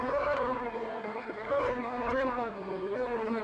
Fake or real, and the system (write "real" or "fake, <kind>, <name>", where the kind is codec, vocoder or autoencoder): fake, codec, SNAC